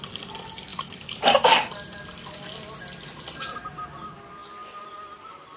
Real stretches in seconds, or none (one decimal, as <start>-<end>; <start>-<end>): 0.0-5.6